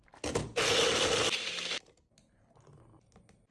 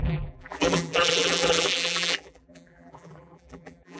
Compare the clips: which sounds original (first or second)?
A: first